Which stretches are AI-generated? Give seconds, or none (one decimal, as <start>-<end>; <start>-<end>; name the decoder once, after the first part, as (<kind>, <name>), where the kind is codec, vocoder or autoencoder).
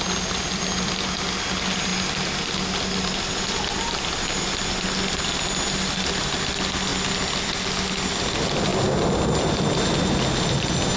none